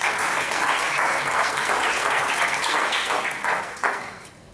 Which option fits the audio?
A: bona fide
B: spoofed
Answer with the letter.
B